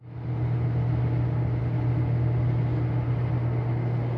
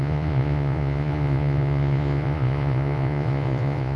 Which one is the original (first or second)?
first